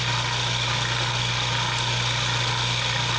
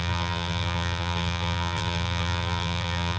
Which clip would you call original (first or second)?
first